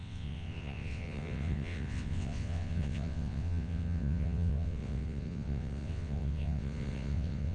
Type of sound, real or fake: fake